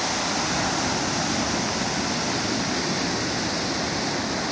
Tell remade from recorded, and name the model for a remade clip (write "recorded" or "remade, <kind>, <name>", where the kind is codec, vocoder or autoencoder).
recorded